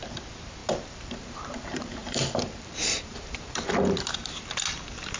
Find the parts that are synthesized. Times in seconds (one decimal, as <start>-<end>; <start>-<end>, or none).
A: 0.6-3.7